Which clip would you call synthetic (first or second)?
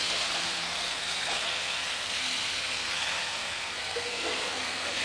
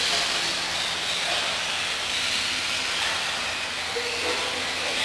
first